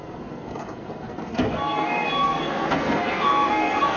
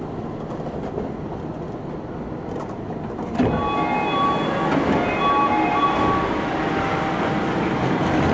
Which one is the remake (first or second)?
first